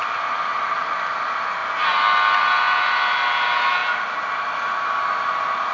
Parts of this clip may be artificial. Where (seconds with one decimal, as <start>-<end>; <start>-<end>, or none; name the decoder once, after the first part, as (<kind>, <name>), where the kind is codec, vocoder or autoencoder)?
0.5-1.1 (vocoder, BigVGAN v2)